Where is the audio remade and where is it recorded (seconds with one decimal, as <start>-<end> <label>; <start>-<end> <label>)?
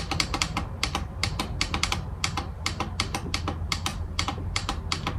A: 0.0-3.9 recorded; 3.9-4.8 remade; 4.8-5.2 recorded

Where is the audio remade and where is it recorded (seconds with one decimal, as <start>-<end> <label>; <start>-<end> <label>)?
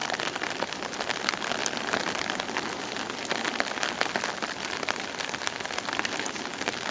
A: 0.0-0.7 remade; 0.7-1.6 recorded; 1.6-3.1 remade; 3.1-6.9 recorded